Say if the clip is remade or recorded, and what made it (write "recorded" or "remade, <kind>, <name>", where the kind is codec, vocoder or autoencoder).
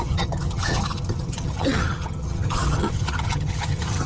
remade, vocoder, HiFi-GAN